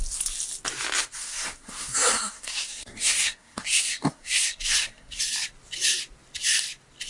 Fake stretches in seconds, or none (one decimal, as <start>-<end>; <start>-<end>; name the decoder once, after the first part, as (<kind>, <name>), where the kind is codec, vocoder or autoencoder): 1.2-5.2 (codec, SNAC)